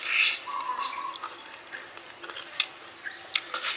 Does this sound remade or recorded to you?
recorded